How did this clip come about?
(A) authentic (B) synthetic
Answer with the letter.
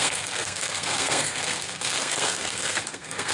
B